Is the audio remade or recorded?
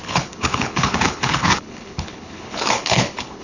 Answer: remade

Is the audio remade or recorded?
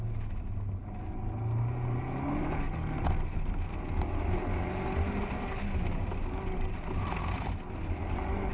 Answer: recorded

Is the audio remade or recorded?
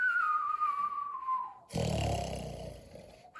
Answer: recorded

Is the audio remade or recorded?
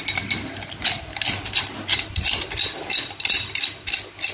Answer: recorded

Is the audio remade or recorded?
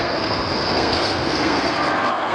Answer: remade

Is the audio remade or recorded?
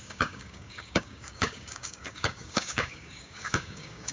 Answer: remade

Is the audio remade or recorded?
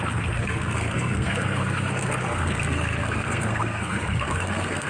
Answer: remade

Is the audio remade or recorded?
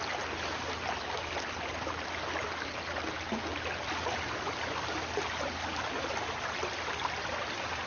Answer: recorded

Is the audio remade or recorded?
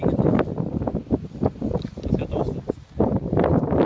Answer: recorded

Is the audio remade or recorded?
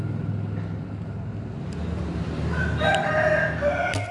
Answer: recorded